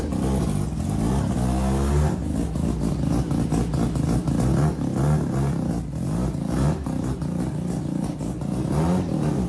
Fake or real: real